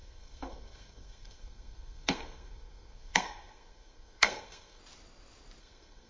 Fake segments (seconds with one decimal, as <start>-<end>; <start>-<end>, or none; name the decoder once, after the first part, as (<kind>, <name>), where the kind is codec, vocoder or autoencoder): 0.0-4.8 (codec, SNAC); 5.6-6.1